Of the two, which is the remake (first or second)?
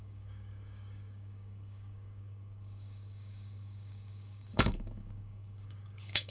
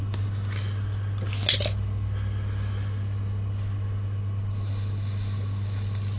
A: first